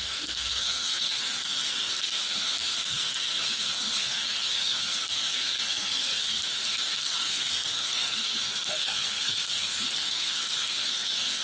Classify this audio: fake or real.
fake